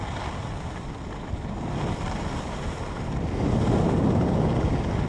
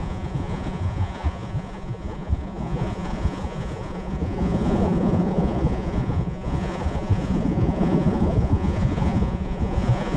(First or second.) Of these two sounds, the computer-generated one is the second